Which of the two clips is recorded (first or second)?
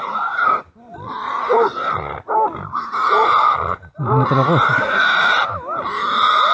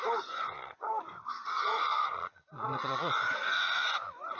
first